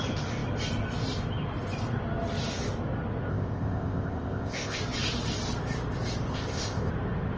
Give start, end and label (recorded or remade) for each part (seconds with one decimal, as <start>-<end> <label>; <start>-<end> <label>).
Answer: 0.0-3.3 recorded; 3.3-4.8 remade; 4.8-6.3 recorded; 6.3-6.9 remade; 6.9-7.4 recorded